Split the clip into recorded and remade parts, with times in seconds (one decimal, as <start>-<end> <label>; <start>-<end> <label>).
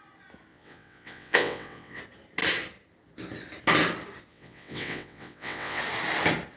0.0-0.5 recorded; 0.5-2.0 remade; 2.0-4.3 recorded; 4.3-5.8 remade; 5.8-6.6 recorded